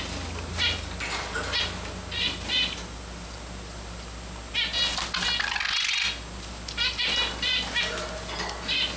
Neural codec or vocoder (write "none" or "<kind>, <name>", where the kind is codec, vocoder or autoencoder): none